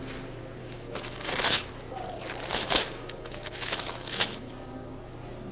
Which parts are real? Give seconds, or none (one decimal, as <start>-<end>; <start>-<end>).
0.0-0.6; 1.7-2.5; 4.5-5.5